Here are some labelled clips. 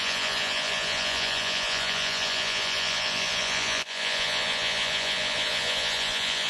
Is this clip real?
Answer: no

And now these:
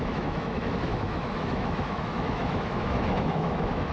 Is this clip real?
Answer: no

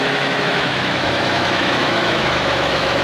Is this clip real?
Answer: no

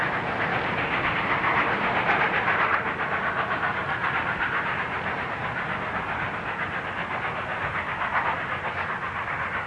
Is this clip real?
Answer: yes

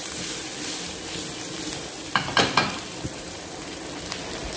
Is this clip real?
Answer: no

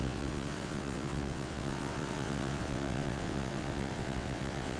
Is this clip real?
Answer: no